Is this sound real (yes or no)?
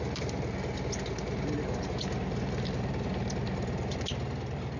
yes